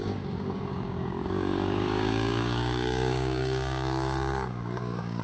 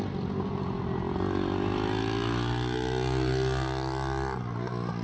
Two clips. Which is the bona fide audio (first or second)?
second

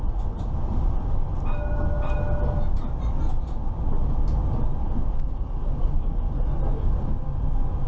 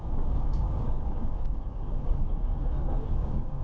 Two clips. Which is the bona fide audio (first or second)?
first